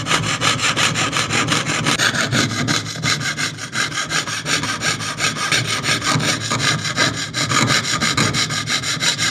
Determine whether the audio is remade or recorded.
recorded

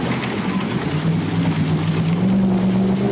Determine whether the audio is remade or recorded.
recorded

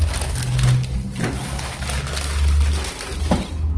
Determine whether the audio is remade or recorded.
recorded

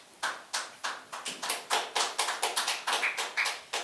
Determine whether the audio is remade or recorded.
recorded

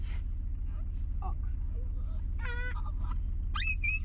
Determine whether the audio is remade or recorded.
recorded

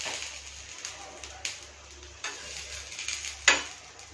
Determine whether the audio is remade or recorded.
recorded